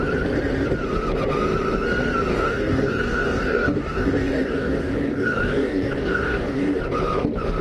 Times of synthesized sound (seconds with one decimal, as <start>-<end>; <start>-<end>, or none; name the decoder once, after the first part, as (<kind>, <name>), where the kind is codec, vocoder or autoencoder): 2.3-6.8 (codec, DAC)